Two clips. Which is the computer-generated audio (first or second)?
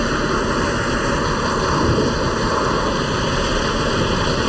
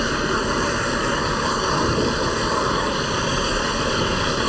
second